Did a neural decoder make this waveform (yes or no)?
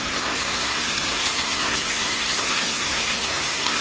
yes